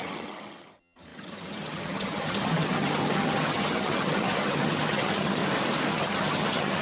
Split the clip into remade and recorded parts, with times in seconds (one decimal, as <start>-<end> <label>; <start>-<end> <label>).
0.0-5.4 remade; 5.4-5.9 recorded; 5.9-6.8 remade